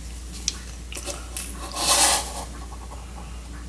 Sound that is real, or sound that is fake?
real